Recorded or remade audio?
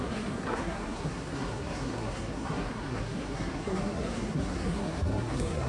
remade